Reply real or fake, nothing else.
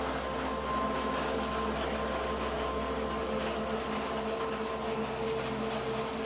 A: real